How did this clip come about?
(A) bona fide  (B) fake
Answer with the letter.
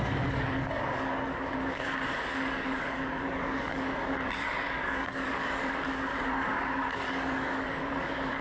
B